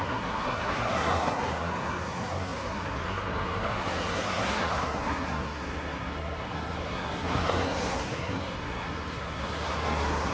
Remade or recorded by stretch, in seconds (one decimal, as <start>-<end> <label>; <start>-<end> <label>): 0.0-10.3 remade